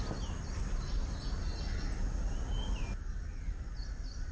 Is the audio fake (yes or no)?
no